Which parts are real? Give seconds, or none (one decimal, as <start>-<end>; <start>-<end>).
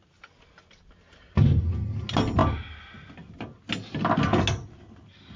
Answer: 0.0-5.4